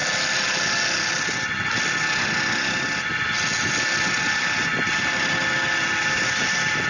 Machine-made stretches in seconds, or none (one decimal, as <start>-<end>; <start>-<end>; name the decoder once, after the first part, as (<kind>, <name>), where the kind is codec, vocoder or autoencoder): none